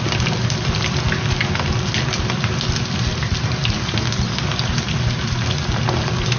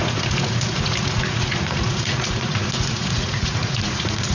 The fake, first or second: second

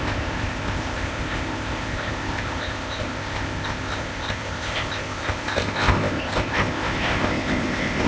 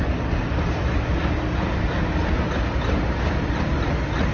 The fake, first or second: first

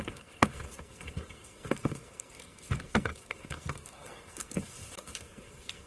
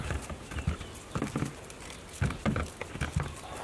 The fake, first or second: first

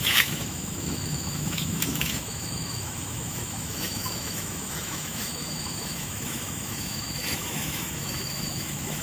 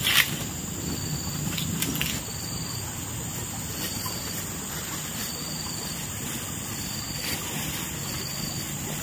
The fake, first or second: first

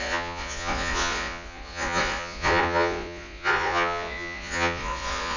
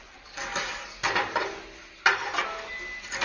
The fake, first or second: first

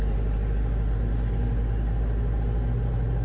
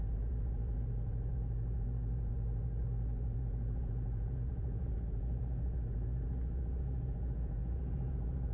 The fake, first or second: second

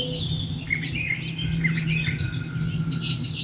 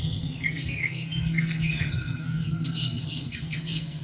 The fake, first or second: second